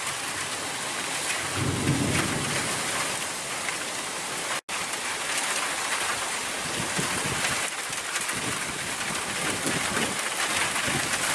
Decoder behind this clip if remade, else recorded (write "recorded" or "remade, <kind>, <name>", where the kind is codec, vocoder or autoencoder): recorded